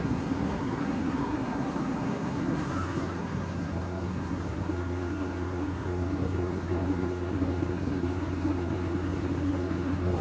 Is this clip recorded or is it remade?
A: remade